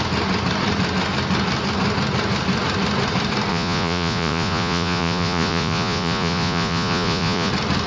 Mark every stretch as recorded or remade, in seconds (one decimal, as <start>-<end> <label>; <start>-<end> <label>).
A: 0.0-3.5 recorded; 3.5-7.5 remade; 7.5-7.9 recorded